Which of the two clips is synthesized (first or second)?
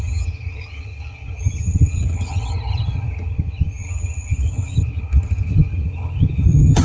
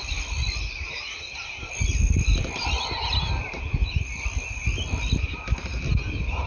first